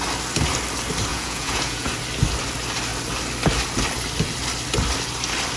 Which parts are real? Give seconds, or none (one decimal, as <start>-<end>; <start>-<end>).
0.0-1.1; 1.9-5.6